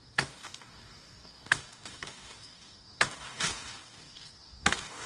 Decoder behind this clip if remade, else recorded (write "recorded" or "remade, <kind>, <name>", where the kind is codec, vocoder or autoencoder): remade, codec, DAC